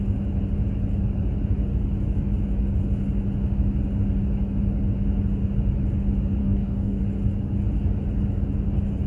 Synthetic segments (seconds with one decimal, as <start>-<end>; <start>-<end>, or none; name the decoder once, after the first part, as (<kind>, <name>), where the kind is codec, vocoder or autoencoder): 6.4-7.0 (codec, DAC)